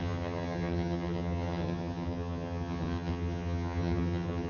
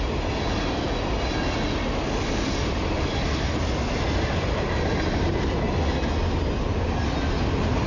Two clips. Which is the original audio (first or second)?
second